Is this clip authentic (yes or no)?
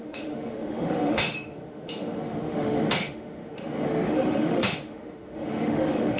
no